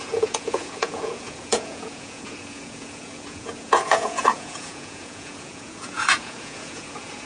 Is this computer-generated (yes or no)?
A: yes